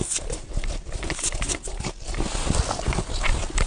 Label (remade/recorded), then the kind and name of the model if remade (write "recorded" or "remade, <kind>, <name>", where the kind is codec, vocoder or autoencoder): recorded